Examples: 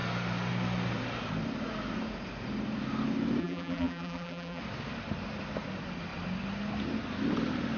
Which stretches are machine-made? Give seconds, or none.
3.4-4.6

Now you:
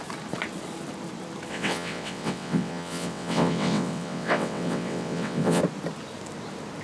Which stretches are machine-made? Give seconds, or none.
1.5-5.6

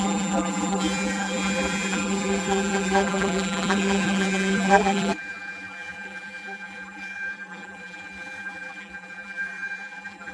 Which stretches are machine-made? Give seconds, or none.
0.0-10.3

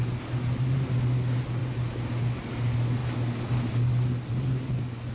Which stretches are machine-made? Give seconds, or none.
none

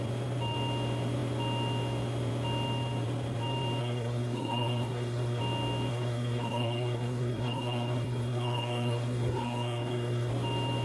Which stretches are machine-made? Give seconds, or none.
3.8-5.4; 5.9-10.3

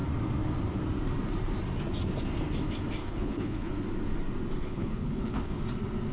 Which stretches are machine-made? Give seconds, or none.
3.0-3.7; 4.6-5.6